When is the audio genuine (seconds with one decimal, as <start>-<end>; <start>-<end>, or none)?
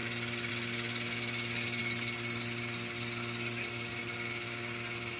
0.0-5.2